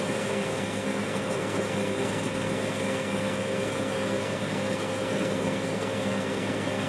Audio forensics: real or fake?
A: fake